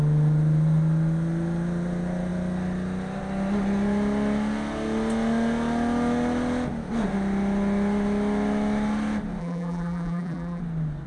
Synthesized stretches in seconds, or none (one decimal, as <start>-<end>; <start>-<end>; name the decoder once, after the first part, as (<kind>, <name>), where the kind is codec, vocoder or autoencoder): 9.4-10.6 (vocoder, BigVGAN v2)